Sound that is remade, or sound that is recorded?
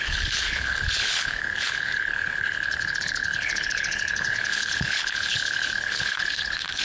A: remade